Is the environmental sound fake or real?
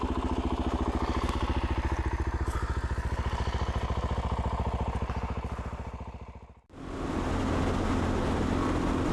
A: real